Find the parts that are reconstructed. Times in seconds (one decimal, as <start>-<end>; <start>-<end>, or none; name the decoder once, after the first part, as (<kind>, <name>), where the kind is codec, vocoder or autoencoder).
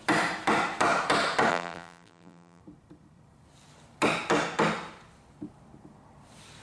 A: 1.5-2.6 (vocoder, BigVGAN v2)